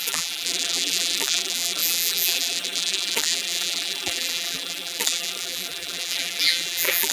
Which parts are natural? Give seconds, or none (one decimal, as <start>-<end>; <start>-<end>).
none